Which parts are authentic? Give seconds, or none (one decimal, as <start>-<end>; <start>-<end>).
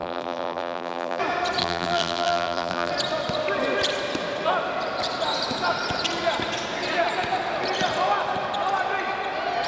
1.2-1.6; 2.9-9.7